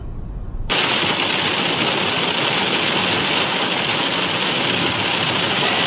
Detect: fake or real real